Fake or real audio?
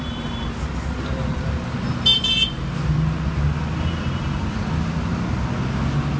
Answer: real